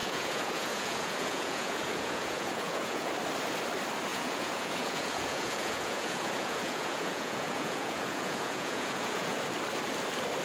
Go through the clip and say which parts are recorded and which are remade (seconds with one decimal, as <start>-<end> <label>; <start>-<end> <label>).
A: 0.0-3.1 remade; 3.1-4.1 recorded; 4.1-9.4 remade; 9.4-10.4 recorded